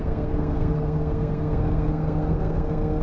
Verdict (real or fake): fake